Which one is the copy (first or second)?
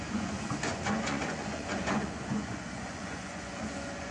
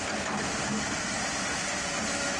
first